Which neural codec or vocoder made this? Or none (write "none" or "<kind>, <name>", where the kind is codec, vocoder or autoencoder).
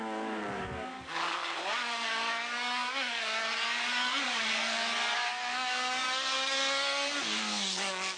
codec, DAC